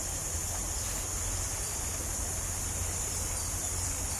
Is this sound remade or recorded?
recorded